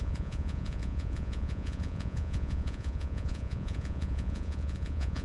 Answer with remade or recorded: remade